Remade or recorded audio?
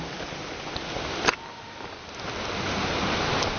recorded